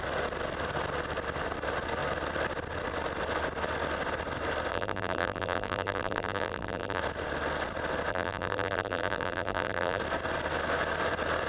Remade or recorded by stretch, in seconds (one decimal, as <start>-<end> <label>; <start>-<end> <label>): 0.0-4.7 recorded; 4.7-7.0 remade; 7.0-8.1 recorded; 8.1-10.0 remade; 10.0-11.5 recorded

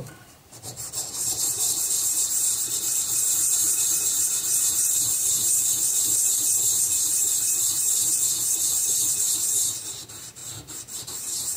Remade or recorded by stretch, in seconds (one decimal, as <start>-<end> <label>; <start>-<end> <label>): 0.0-11.6 remade

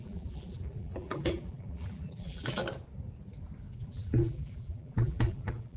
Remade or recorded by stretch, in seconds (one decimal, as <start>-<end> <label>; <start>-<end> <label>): 0.0-2.6 remade; 2.6-3.8 recorded; 3.8-5.8 remade

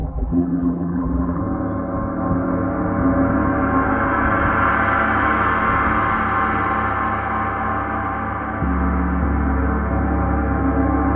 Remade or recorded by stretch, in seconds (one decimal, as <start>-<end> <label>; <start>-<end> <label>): 0.0-1.4 remade; 1.4-11.2 recorded

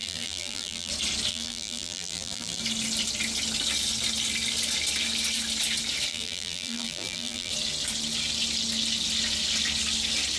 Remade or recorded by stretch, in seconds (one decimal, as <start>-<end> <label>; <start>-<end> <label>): 0.0-0.9 remade; 0.9-1.3 recorded; 1.3-2.6 remade; 2.6-6.1 recorded; 6.1-7.5 remade; 7.5-10.4 recorded

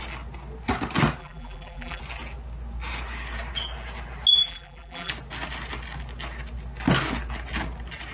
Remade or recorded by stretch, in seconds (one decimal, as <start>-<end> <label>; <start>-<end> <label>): 0.0-1.2 recorded; 1.2-2.0 remade; 2.0-4.4 recorded; 4.4-5.1 remade; 5.1-8.1 recorded

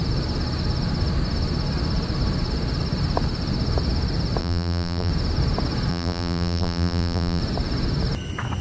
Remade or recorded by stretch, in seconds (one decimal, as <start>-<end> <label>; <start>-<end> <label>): 0.0-4.4 recorded; 4.4-5.1 remade; 5.1-5.9 recorded; 5.9-7.4 remade; 7.4-8.6 recorded

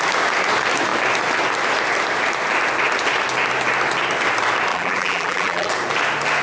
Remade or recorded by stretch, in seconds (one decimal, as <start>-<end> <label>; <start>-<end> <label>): 0.0-4.7 recorded; 4.7-5.7 remade; 5.7-6.4 recorded